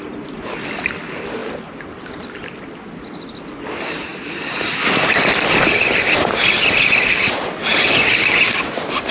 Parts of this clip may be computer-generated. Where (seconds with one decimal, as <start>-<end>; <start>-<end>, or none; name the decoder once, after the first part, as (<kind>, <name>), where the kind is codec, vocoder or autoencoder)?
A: 4.1-6.6 (vocoder, BigVGAN v2); 7.7-8.7